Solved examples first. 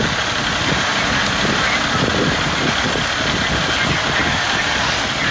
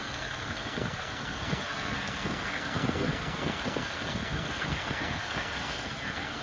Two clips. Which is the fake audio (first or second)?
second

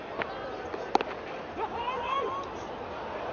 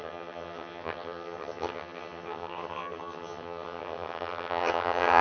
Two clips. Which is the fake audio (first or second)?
second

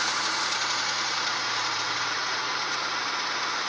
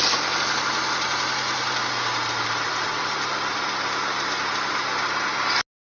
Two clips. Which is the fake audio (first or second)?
first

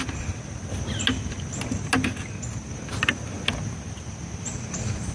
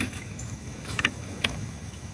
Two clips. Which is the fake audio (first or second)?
second